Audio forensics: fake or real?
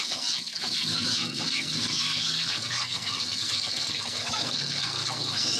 fake